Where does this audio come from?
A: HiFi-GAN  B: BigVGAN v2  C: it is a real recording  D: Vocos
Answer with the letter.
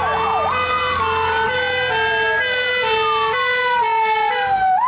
C